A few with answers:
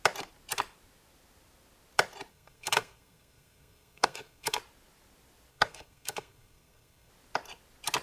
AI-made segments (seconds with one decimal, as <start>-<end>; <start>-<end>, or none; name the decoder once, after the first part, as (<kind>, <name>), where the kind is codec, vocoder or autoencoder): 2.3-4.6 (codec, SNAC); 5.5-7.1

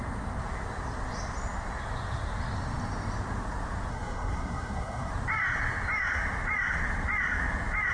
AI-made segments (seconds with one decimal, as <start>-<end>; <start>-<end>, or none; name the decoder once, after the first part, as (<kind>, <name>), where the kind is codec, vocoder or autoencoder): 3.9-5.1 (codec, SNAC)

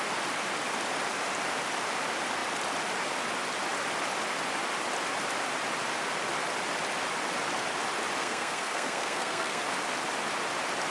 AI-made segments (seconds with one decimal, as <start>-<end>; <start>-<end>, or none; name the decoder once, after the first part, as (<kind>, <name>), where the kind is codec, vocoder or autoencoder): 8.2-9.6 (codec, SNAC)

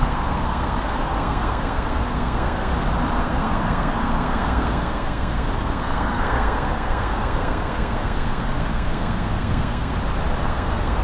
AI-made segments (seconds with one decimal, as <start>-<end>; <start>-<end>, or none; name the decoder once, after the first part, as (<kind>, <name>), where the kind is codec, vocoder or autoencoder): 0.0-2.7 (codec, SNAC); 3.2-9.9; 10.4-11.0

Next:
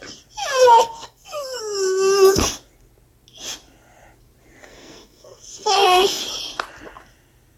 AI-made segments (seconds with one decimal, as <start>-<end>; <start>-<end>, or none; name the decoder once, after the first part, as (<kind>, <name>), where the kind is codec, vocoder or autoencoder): 0.5-2.4 (codec, SNAC); 4.6-6.2